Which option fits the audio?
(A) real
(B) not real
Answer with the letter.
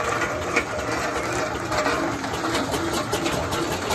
A